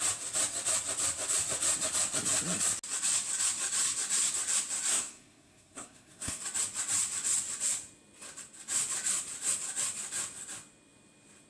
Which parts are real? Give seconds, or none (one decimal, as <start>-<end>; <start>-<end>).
0.0-4.9; 6.4-11.5